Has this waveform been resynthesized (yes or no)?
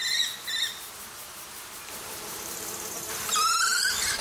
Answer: yes